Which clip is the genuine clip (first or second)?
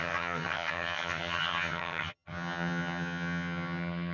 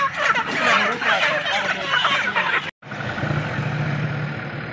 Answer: second